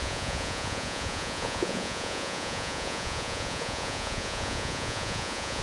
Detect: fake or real fake